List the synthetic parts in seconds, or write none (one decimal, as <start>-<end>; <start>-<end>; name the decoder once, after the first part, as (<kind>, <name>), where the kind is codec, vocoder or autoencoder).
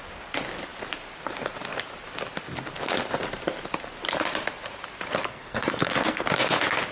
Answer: 5.3-6.3 (codec, SNAC)